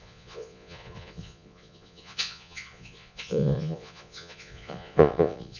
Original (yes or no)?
no